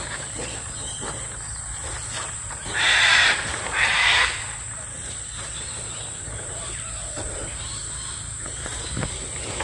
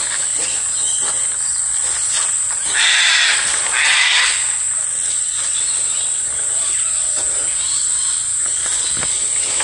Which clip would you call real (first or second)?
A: second